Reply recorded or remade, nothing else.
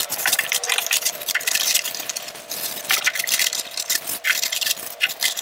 remade